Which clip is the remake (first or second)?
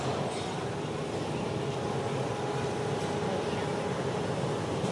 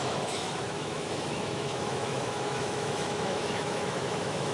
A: second